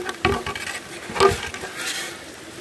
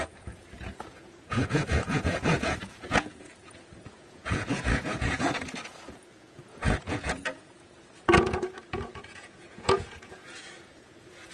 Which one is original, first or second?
first